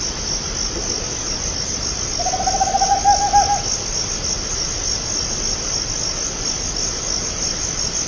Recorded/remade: recorded